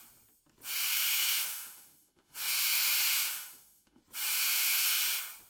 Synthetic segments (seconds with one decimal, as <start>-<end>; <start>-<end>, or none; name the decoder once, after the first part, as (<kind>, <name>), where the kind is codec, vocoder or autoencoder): 0.9-4.0 (autoencoder, DAC-VAE); 4.4-5.0